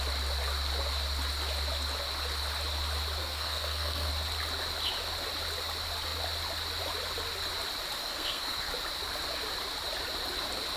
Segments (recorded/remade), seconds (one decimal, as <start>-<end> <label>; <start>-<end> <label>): 0.0-3.2 recorded; 3.2-4.1 remade; 4.1-8.0 recorded; 8.0-8.7 remade; 8.7-10.8 recorded